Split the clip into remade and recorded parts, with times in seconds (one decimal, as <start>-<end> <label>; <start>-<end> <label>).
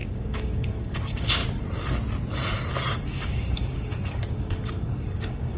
0.0-1.4 remade; 1.4-2.9 recorded; 2.9-5.6 remade